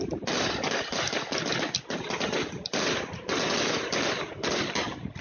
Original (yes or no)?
yes